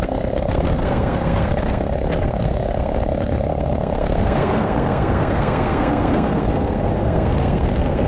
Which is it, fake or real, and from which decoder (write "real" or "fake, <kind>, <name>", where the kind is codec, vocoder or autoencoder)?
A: fake, codec, SNAC